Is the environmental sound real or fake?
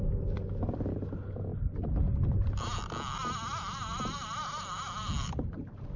real